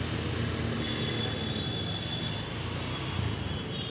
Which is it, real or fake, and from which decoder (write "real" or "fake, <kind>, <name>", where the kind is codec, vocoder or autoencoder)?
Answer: real